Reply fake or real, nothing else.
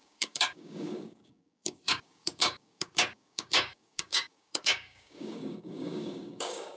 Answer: fake